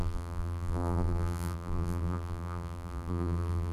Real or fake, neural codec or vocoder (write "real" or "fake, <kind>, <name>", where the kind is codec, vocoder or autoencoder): fake, vocoder, BigVGAN v2